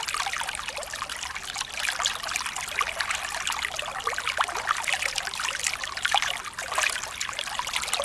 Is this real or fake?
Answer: real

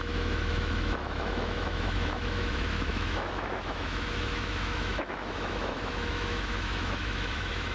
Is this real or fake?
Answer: fake